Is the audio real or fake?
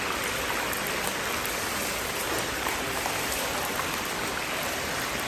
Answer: real